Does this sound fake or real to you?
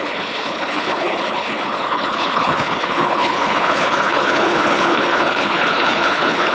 fake